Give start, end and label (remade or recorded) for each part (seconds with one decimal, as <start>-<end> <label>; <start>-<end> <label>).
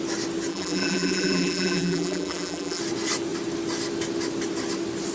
0.0-0.5 recorded; 0.5-2.8 remade; 2.8-5.1 recorded